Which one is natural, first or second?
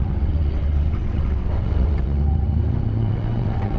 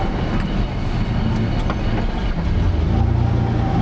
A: second